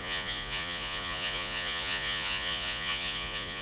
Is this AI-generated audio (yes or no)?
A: yes